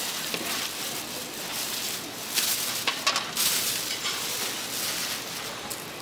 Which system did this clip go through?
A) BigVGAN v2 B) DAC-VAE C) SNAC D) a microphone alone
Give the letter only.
D